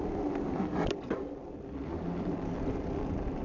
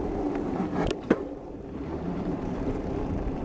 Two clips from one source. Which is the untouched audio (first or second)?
first